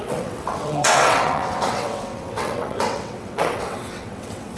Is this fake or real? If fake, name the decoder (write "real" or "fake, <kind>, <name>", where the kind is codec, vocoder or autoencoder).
fake, vocoder, WaveNeXt